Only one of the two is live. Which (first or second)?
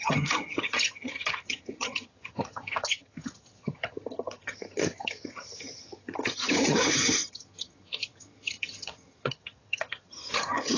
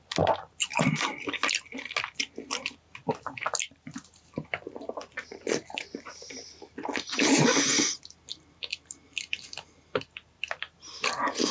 second